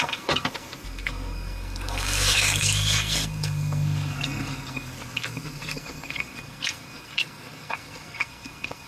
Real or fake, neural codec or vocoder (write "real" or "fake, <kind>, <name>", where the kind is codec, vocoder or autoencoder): fake, codec, SNAC